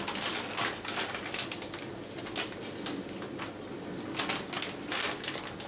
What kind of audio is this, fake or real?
real